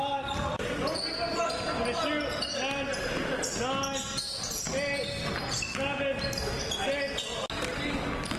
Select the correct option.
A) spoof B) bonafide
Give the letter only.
B